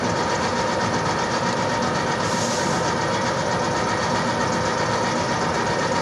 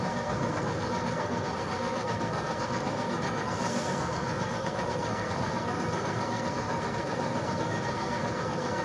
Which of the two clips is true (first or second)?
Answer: first